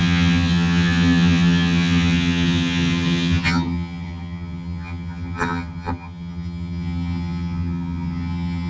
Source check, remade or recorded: remade